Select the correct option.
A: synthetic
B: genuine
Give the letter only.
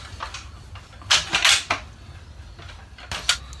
B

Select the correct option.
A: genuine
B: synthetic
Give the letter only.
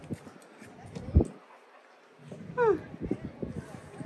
A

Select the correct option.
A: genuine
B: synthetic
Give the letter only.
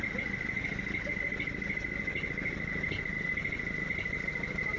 A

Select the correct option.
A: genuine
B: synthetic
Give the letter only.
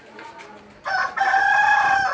A